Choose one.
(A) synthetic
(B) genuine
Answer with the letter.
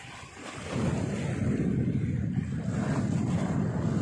B